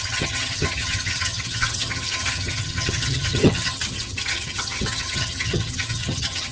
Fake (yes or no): yes